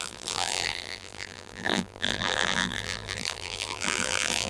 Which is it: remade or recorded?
remade